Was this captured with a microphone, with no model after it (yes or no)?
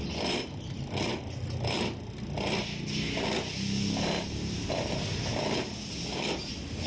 yes